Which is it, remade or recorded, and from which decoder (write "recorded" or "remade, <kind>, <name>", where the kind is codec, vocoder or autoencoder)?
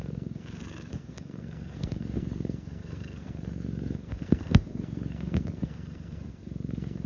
remade, codec, SNAC